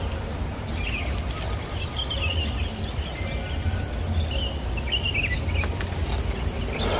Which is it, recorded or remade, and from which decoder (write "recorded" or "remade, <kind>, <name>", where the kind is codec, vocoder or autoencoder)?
recorded